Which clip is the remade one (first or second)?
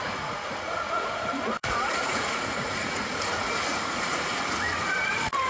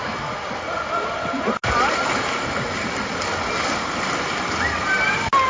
first